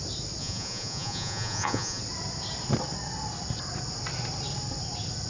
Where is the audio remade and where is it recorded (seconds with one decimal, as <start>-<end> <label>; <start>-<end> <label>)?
0.0-0.4 recorded; 0.4-2.0 remade; 2.0-5.3 recorded